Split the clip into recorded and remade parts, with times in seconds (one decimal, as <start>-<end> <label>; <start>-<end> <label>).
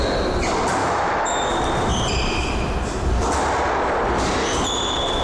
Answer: 0.0-0.8 recorded; 0.8-1.5 remade; 1.5-5.2 recorded